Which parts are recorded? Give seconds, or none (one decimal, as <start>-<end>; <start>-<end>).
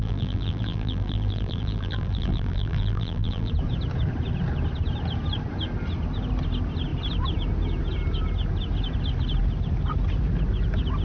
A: 3.5-11.0